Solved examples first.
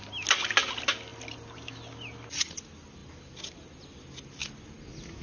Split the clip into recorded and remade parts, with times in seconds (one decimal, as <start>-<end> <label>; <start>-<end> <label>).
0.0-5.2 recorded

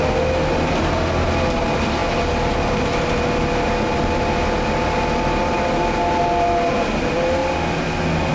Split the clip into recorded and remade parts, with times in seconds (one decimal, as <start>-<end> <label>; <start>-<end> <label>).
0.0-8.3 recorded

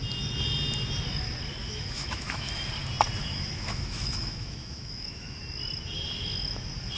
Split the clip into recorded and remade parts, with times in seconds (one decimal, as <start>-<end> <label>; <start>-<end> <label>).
0.0-1.6 recorded; 1.6-2.5 remade; 2.5-3.2 recorded; 3.2-5.4 remade; 5.4-7.0 recorded

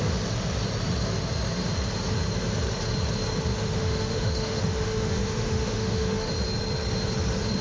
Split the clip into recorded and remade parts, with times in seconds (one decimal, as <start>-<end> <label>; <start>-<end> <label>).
0.0-3.5 recorded; 3.5-6.3 remade; 6.3-7.6 recorded